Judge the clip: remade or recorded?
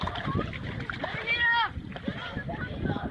recorded